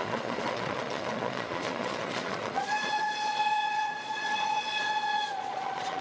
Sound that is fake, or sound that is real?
fake